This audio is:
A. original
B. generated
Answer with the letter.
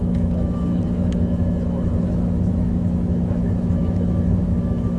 B